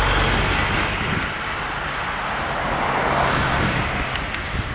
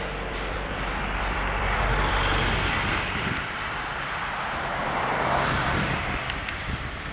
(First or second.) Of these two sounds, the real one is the first